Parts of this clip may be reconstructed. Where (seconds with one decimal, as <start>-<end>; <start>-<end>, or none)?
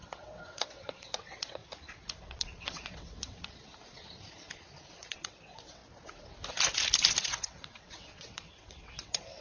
0.0-1.6; 2.2-3.4; 5.0-5.8; 7.2-9.4